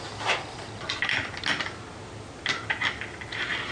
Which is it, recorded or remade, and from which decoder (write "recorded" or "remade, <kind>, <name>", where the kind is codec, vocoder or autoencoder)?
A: recorded